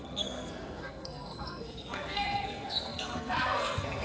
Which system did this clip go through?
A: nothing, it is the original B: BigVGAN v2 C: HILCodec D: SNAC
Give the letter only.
D